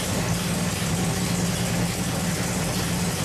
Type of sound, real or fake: real